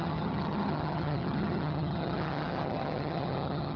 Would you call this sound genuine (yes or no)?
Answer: no